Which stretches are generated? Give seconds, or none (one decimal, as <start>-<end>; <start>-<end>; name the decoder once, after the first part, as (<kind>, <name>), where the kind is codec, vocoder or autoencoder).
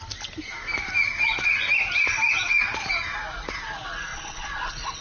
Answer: 4.1-5.0 (vocoder, Vocos)